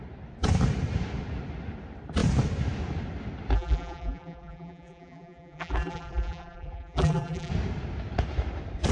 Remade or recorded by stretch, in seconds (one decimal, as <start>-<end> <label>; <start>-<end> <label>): 0.0-3.5 recorded; 3.5-7.5 remade; 7.5-8.9 recorded